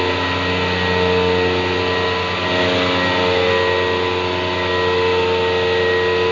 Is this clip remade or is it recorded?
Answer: recorded